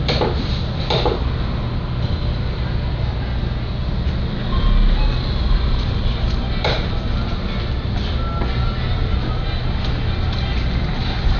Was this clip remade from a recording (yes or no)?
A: no